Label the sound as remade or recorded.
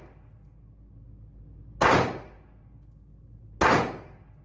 recorded